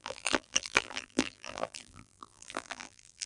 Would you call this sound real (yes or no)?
no